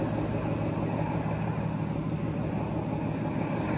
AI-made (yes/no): no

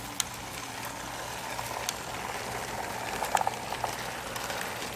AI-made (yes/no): no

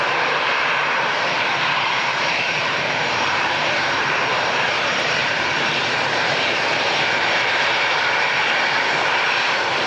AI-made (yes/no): yes